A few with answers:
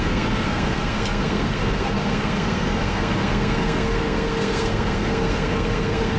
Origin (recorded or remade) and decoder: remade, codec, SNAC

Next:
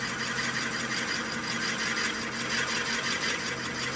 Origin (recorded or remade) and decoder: recorded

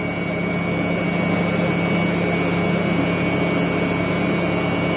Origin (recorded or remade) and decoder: recorded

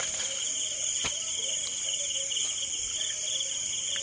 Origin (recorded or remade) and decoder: recorded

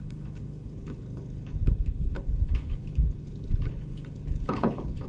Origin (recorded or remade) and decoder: remade, codec, HILCodec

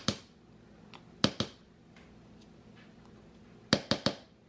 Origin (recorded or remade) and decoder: recorded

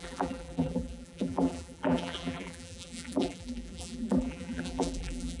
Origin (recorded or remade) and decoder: remade, vocoder, BigVGAN v2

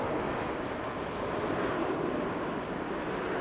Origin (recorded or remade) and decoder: recorded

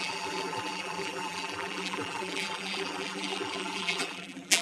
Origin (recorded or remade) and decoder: remade, vocoder, BigVGAN v2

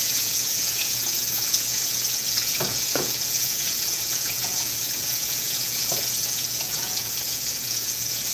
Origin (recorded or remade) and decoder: remade, vocoder, Vocos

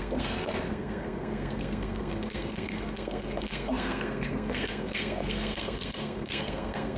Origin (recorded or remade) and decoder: remade, codec, SNAC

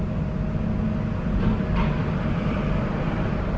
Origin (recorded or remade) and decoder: recorded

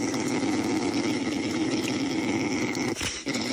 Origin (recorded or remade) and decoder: remade, vocoder, BigVGAN v2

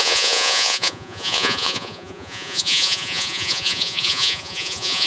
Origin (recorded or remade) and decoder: remade, vocoder, Vocos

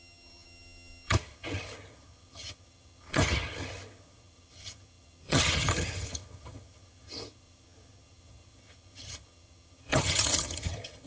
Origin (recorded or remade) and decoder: remade, vocoder, HiFi-GAN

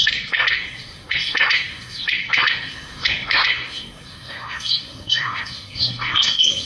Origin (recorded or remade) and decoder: remade, codec, SNAC